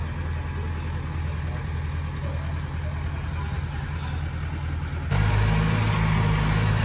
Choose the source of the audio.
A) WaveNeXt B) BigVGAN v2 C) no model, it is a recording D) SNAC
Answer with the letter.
C